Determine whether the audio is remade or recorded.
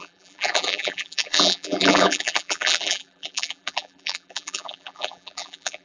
remade